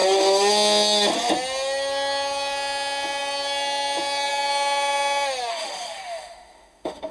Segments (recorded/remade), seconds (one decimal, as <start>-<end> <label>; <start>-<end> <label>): 0.0-5.5 recorded; 5.5-7.1 remade